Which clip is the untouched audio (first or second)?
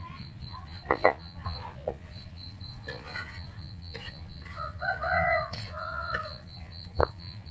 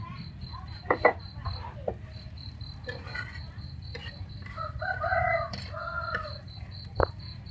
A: second